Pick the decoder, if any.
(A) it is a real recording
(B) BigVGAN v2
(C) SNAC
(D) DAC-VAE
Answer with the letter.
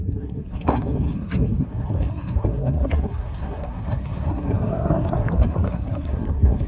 C